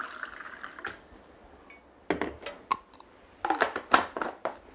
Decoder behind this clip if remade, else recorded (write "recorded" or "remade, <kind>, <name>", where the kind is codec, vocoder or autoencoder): recorded